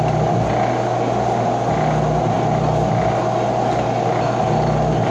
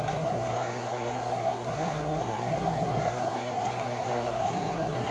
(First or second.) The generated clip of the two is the second